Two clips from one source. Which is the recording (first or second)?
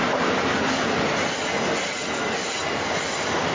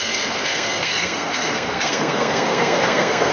first